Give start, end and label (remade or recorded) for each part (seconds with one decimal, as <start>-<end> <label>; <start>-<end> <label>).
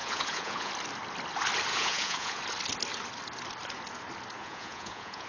0.0-0.7 remade; 0.7-1.7 recorded; 1.7-2.4 remade; 2.4-4.4 recorded; 4.4-5.3 remade